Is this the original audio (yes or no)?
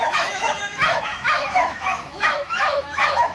no